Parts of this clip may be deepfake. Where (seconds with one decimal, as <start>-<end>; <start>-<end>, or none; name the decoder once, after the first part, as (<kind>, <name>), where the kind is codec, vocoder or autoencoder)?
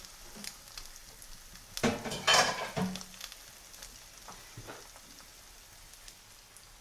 none